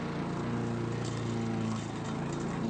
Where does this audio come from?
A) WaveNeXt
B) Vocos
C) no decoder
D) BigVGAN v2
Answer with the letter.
C